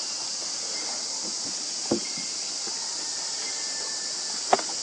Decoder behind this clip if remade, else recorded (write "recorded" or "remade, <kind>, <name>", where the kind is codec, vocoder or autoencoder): recorded